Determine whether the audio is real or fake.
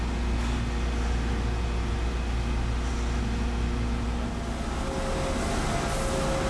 real